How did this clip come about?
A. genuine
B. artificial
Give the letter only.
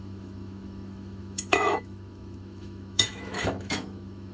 B